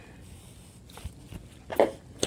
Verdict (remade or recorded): recorded